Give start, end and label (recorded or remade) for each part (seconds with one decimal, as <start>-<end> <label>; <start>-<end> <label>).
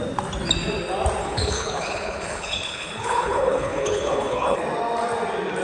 0.0-1.2 recorded; 1.2-4.6 remade; 4.6-5.6 recorded